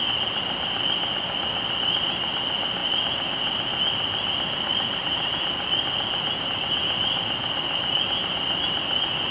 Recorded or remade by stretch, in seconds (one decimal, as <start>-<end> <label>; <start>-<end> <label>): 0.0-9.3 recorded